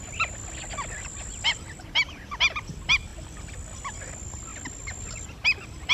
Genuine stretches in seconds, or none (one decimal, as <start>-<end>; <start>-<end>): 0.4-0.9